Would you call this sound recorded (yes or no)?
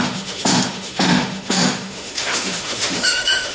no